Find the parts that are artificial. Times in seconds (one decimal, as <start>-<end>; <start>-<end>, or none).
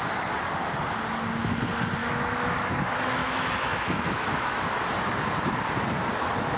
2.0-2.7; 3.2-4.7